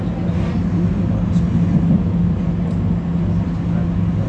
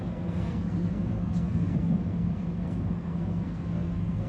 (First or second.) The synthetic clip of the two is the second